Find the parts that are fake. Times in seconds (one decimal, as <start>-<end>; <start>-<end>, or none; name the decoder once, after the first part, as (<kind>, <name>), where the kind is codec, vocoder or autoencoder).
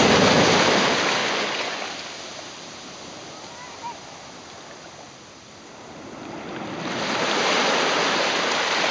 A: 1.2-1.8 (vocoder, Vocos)